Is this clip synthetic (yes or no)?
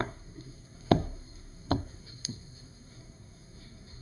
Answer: yes